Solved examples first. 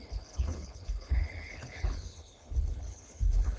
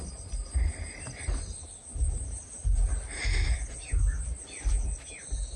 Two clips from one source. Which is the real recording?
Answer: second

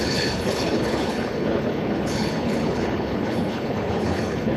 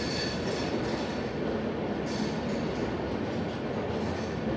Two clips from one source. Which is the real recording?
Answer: second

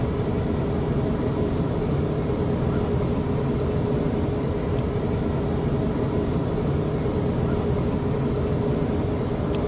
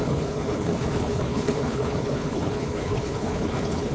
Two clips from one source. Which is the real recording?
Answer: first